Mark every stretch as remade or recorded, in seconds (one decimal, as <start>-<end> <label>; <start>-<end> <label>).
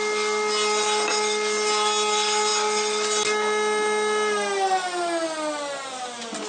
0.0-6.5 recorded